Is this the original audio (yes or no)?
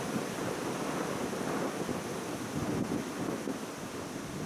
yes